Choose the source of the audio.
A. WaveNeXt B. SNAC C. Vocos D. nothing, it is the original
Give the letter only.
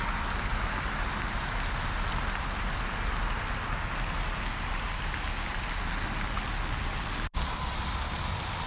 D